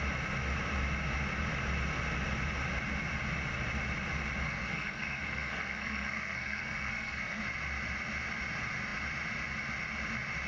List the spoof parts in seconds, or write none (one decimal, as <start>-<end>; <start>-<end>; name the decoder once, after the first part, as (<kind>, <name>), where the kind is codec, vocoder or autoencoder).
4.5-7.4 (codec, SNAC)